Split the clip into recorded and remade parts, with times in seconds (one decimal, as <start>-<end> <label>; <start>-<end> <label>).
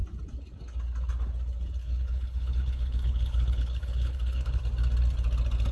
0.0-1.8 recorded; 1.8-4.6 remade; 4.6-5.7 recorded